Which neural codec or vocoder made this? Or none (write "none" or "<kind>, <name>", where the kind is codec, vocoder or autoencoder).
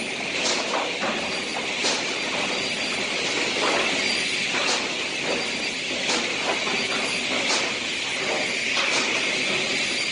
none